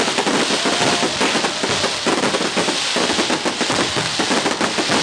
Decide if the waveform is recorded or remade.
recorded